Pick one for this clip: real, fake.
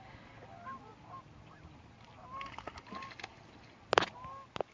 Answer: real